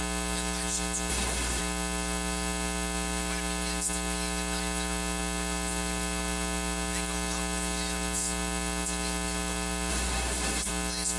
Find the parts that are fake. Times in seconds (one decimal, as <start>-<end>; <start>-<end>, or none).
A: 1.1-1.6; 9.9-10.7